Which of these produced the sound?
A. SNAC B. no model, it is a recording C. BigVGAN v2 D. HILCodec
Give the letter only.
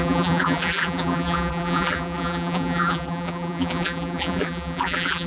C